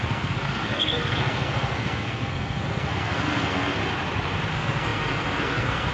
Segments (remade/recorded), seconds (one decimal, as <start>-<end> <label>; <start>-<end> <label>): 0.0-3.8 remade; 3.8-4.5 recorded; 4.5-5.9 remade